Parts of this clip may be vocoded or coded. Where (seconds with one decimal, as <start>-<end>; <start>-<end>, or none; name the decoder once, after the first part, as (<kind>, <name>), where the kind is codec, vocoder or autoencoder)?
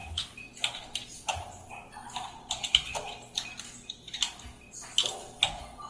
none